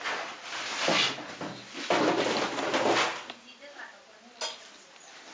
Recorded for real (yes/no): yes